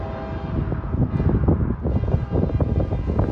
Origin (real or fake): real